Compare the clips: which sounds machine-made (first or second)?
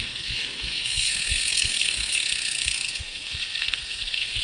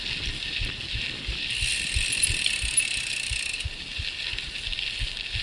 first